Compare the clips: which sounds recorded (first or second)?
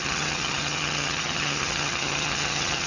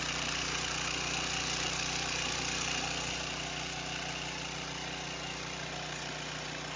second